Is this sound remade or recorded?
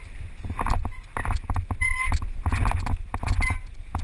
recorded